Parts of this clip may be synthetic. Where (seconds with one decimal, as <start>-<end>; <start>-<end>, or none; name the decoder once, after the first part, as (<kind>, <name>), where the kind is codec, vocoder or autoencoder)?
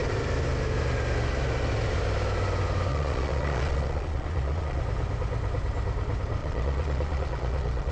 2.9-4.8 (vocoder, Vocos); 6.4-7.9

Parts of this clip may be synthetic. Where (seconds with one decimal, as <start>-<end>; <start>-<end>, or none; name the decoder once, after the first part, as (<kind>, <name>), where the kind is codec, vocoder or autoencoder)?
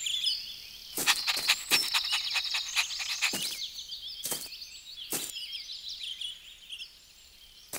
none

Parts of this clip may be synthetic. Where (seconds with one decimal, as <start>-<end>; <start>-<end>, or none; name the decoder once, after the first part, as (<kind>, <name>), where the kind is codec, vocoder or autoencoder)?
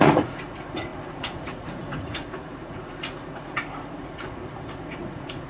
0.0-5.5 (vocoder, Vocos)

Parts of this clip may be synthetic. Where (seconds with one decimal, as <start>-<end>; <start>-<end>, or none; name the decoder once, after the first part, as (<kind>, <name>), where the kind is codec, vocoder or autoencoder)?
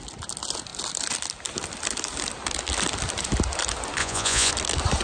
4.0-4.5 (vocoder, Vocos)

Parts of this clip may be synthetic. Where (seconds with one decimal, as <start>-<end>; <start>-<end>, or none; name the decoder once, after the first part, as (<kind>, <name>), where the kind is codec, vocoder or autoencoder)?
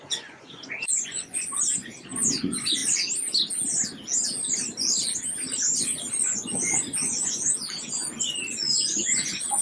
0.0-2.8 (vocoder, Vocos); 6.1-9.6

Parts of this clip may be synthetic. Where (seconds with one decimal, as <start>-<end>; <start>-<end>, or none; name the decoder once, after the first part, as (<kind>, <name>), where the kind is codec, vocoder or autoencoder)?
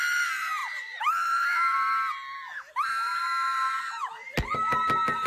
none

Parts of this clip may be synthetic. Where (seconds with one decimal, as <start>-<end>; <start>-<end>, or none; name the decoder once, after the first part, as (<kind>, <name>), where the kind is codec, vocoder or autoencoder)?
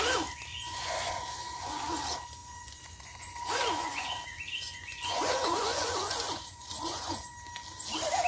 0.5-1.8 (vocoder, Vocos); 2.4-4.1; 4.7-7.3